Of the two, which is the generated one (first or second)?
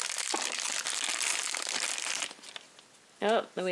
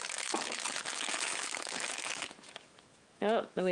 second